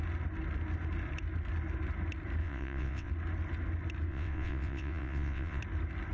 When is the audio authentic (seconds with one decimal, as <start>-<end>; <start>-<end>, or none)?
0.0-2.4; 3.1-4.1; 5.6-6.1